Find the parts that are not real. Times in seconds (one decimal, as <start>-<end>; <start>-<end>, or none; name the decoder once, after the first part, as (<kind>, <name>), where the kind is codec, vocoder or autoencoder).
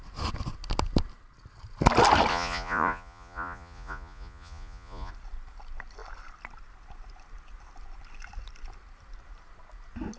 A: 2.3-5.1 (vocoder, Vocos)